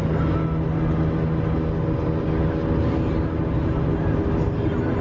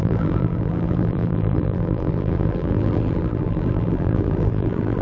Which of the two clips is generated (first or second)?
second